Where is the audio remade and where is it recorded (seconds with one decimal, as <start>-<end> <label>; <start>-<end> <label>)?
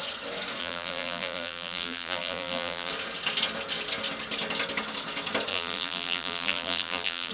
0.0-0.6 recorded; 0.6-2.9 remade; 2.9-5.5 recorded; 5.5-7.3 remade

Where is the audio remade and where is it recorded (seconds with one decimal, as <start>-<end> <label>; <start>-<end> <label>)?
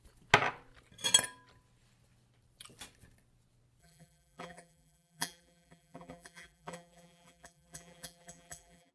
0.0-3.8 recorded; 3.8-8.9 remade